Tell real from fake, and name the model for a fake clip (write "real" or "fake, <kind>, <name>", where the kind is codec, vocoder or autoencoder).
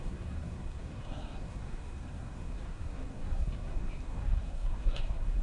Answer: fake, codec, SNAC